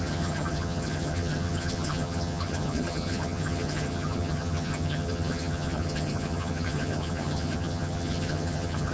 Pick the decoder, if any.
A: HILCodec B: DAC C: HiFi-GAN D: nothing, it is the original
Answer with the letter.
C